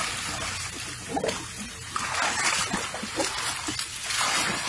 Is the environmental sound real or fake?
real